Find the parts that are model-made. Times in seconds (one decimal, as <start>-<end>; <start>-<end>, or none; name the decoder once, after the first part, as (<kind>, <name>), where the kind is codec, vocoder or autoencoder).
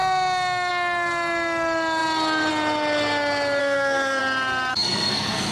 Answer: 3.6-4.2 (codec, SNAC); 4.7-5.5